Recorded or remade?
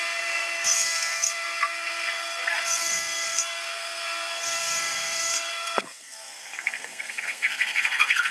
remade